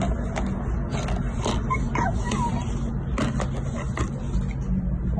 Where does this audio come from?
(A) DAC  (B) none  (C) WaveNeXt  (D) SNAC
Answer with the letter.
B